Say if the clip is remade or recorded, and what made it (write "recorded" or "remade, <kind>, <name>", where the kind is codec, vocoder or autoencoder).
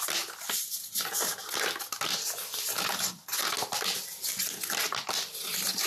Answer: recorded